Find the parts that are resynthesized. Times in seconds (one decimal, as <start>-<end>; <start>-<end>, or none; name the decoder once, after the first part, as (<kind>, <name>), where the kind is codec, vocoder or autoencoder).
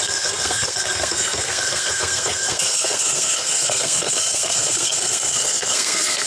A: 0.0-6.3 (codec, SNAC)